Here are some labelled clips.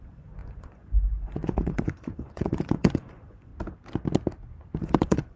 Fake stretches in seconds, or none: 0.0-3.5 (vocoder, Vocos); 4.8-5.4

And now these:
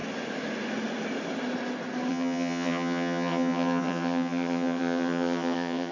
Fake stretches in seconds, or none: 2.1-5.9 (vocoder, HiFi-GAN)

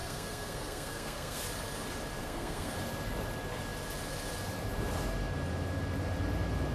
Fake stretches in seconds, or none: 0.0-1.4 (codec, SNAC); 2.2-2.7